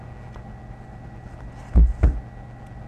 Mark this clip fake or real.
real